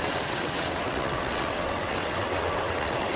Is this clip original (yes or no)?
no